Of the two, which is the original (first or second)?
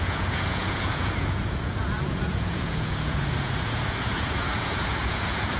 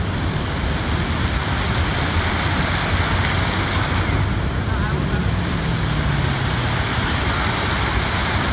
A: second